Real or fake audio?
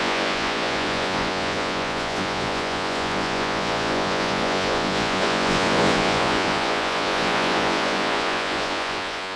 fake